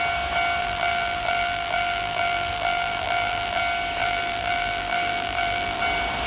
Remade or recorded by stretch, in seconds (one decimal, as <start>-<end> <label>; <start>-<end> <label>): 0.0-0.6 recorded; 0.6-3.6 remade; 3.6-4.0 recorded; 4.0-5.8 remade; 5.8-6.3 recorded